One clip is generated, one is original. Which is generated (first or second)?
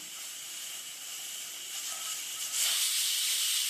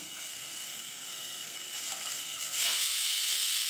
second